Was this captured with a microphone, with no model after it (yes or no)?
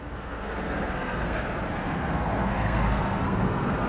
no